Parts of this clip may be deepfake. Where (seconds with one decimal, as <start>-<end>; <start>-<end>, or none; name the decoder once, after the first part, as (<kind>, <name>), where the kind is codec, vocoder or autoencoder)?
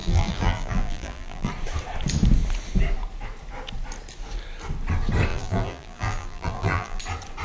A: 0.0-1.5 (vocoder, BigVGAN v2); 5.3-7.0